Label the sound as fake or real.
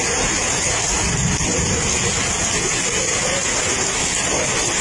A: real